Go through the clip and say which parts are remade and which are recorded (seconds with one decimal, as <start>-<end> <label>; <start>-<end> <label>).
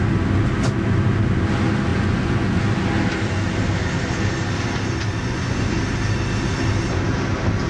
0.0-1.9 recorded; 1.9-2.6 remade; 2.6-5.2 recorded; 5.2-5.8 remade; 5.8-7.7 recorded